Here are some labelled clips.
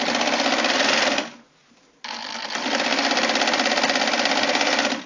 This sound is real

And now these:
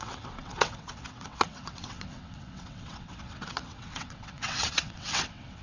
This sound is fake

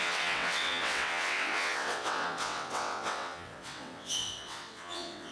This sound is fake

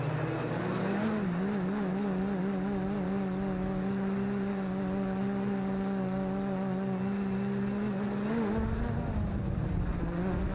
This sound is real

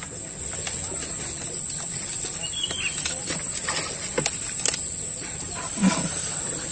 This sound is real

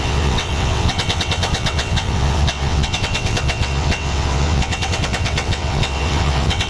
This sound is fake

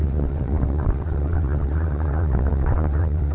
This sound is fake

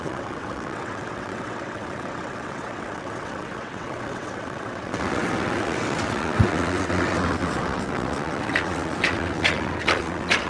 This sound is fake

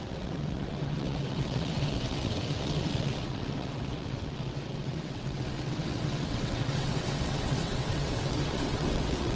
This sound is fake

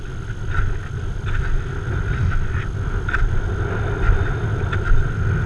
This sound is real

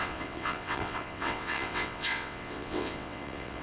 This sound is fake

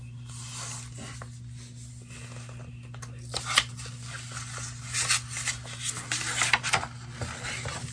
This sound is real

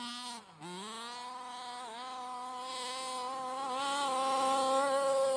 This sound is real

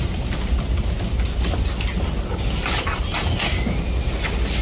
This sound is real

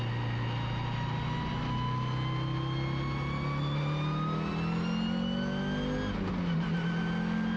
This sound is real